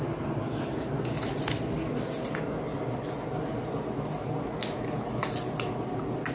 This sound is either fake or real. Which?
real